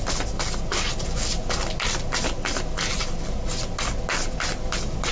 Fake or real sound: real